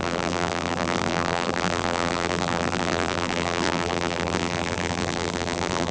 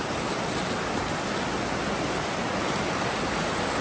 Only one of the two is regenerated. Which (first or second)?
first